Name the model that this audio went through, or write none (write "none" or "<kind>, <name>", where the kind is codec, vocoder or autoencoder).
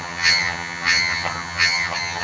vocoder, HiFi-GAN